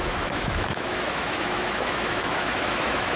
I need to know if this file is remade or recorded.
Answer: remade